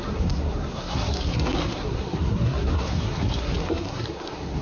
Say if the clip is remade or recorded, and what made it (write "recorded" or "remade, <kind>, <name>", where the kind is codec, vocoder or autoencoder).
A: remade, codec, SNAC